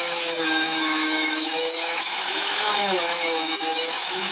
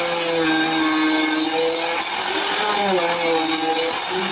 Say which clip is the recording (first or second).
second